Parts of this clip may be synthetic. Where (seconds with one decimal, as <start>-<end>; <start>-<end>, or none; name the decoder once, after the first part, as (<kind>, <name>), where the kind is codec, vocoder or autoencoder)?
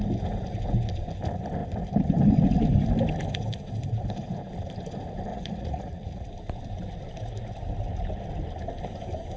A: 5.3-6.3 (vocoder, Vocos)